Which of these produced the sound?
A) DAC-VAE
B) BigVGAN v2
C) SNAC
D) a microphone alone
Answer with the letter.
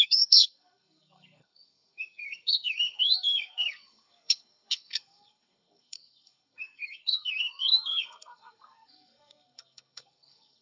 C